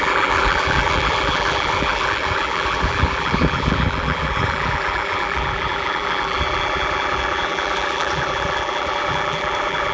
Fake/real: fake